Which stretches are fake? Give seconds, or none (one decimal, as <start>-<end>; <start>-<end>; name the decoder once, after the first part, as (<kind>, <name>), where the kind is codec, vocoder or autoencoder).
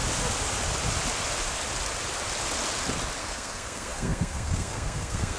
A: 3.2-5.4 (codec, SNAC)